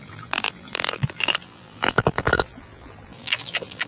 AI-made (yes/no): yes